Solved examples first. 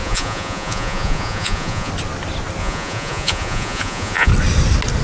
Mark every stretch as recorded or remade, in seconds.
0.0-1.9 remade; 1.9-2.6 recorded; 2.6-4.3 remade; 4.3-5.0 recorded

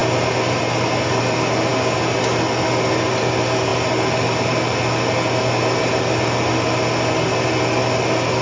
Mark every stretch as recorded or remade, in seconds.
0.0-8.4 recorded

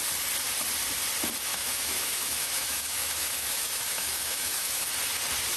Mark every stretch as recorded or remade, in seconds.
0.0-1.5 recorded; 1.5-4.9 remade; 4.9-5.6 recorded

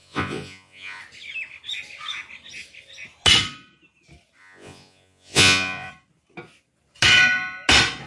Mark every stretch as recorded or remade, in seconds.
0.0-1.0 remade; 1.0-4.4 recorded; 4.4-5.9 remade; 5.9-8.1 recorded

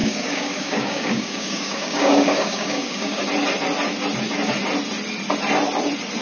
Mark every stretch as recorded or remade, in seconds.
0.0-3.2 remade; 3.2-6.2 recorded

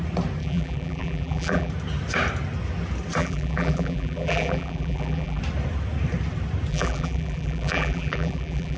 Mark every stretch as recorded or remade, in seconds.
0.0-0.4 recorded; 0.4-1.7 remade; 1.7-3.2 recorded; 3.2-5.4 remade; 5.4-6.7 recorded; 6.7-8.8 remade

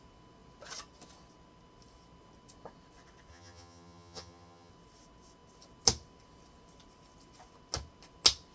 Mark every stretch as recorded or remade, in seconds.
0.0-3.3 recorded; 3.3-4.7 remade; 4.7-8.5 recorded

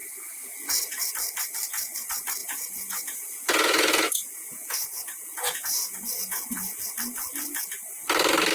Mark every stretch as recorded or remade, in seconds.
0.0-2.4 recorded; 2.4-6.8 remade; 6.8-8.5 recorded